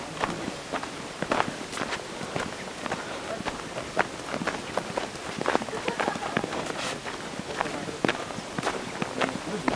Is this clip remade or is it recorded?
recorded